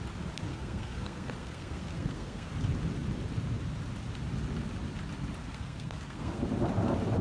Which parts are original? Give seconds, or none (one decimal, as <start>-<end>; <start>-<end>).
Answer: 0.0-0.5; 2.5-5.4; 6.4-7.2